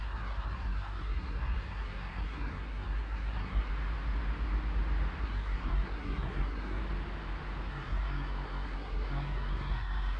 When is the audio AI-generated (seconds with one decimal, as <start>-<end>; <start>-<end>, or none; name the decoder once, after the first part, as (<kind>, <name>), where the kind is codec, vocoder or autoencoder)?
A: 0.0-3.7 (codec, SNAC); 5.2-6.8; 7.7-10.2